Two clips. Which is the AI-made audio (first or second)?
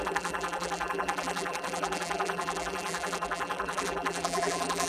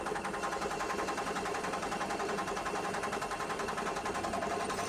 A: first